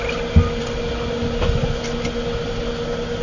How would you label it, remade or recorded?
recorded